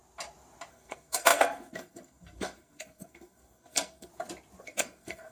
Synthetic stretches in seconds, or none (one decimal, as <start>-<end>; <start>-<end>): 0.7-4.1; 4.6-5.3